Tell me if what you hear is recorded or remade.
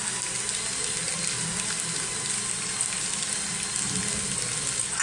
recorded